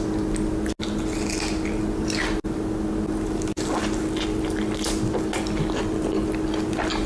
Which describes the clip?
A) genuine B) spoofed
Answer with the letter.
A